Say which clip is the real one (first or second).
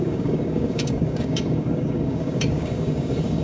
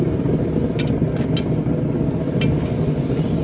second